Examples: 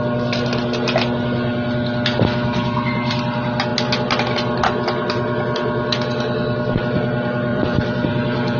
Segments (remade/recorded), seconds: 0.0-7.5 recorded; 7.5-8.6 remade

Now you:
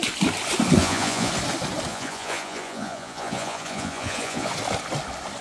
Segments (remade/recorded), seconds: 0.0-0.8 recorded; 0.8-1.3 remade; 1.3-1.9 recorded; 1.9-4.5 remade; 4.5-5.4 recorded

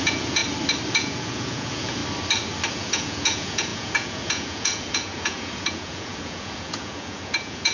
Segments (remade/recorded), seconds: 0.0-0.4 remade; 0.4-0.9 recorded; 0.9-2.0 remade; 2.0-2.7 recorded; 2.7-7.7 remade

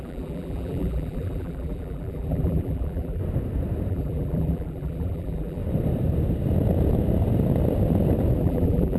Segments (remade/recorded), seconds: 0.0-3.2 remade; 3.2-3.9 recorded; 3.9-5.6 remade; 5.6-8.4 recorded; 8.4-9.0 remade